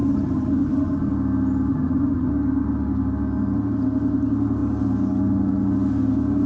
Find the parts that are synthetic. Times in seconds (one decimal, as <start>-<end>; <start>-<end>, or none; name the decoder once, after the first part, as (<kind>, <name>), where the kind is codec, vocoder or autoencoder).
0.0-1.1 (vocoder, HiFi-GAN); 1.7-2.3